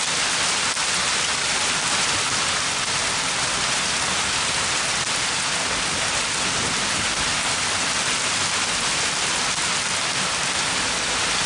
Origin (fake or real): real